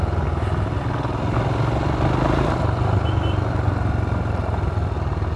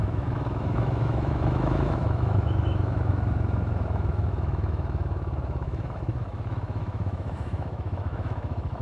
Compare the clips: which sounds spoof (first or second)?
second